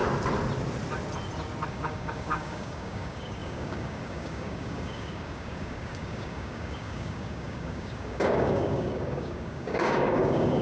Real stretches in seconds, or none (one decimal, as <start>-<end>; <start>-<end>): 0.0-1.7